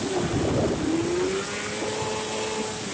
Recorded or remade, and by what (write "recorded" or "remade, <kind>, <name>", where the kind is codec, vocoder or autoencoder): recorded